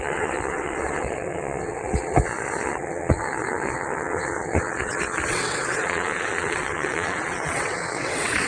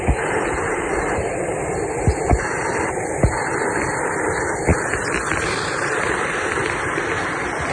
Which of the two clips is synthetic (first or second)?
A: first